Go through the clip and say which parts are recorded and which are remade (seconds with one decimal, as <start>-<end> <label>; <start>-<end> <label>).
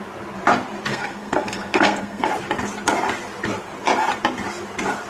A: 0.0-0.9 recorded; 0.9-2.3 remade; 2.3-5.1 recorded